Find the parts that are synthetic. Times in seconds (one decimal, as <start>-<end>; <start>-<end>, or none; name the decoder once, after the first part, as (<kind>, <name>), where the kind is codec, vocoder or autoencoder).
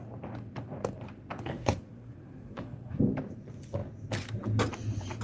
1.5-3.0 (codec, SNAC)